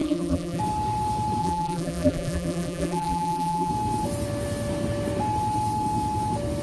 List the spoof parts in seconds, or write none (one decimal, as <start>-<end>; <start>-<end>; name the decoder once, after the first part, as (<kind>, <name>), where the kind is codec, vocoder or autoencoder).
0.0-0.6 (vocoder, BigVGAN v2); 1.4-3.7